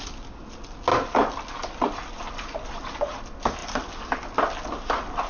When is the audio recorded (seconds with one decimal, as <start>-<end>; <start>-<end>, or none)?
0.0-5.3